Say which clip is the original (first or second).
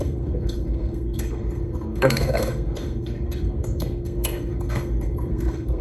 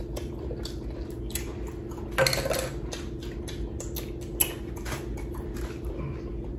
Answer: second